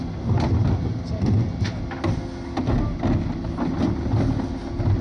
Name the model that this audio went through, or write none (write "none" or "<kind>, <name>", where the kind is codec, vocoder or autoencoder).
none